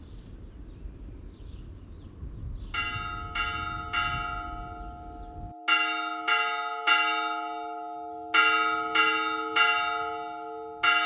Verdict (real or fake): real